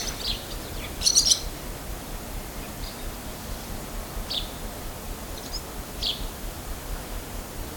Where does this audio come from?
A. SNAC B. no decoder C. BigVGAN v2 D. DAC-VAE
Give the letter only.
C